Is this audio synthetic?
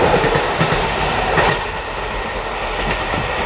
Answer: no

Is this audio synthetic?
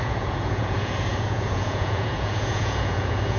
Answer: yes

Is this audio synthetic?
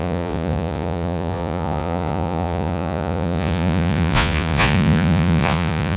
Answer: yes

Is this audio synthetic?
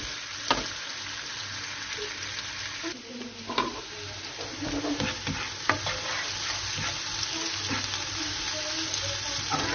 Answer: no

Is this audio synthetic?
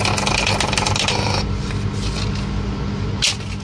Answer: no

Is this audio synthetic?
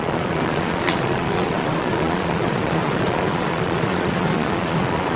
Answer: yes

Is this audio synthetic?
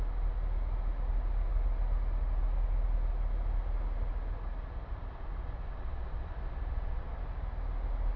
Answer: no